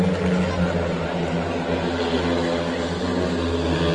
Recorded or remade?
recorded